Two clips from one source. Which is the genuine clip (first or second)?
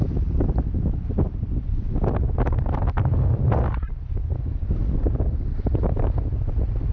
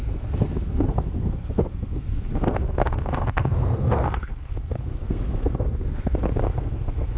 first